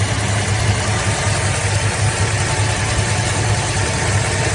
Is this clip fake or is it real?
real